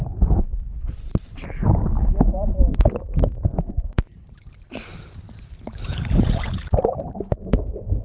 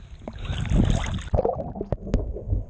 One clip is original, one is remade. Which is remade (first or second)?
first